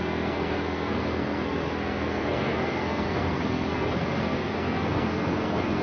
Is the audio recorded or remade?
remade